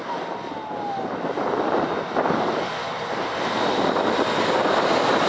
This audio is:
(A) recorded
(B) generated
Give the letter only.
A